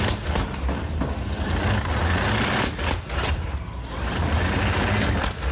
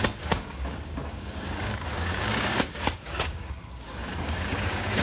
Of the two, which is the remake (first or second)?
second